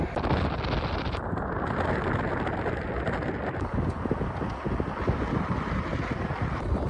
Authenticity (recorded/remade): recorded